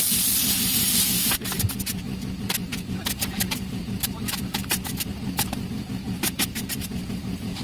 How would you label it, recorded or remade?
remade